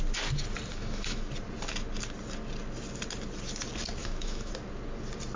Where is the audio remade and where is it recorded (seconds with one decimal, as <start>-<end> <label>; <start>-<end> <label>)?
0.0-0.7 recorded; 0.7-1.3 remade; 1.3-4.0 recorded; 4.0-4.5 remade; 4.5-5.4 recorded